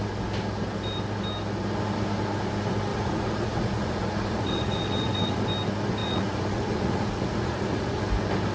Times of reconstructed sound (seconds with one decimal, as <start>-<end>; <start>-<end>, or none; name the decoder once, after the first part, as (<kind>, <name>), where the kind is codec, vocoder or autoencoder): 2.9-5.4 (vocoder, Vocos); 6.0-8.0